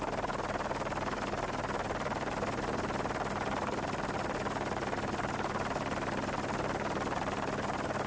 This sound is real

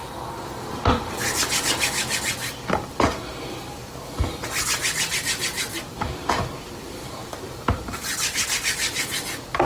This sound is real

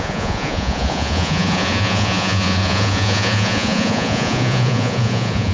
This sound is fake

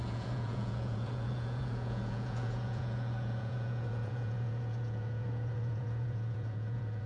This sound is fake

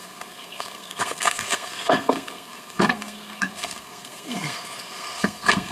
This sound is fake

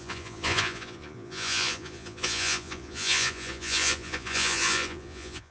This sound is fake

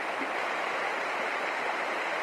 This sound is real